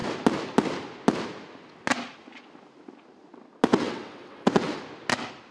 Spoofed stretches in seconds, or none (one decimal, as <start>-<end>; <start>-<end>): 3.7-4.8